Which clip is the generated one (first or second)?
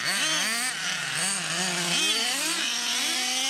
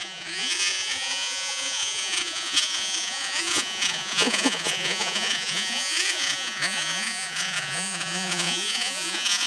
second